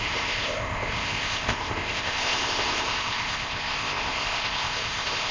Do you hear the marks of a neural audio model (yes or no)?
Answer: yes